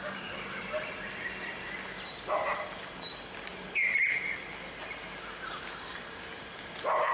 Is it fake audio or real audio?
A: real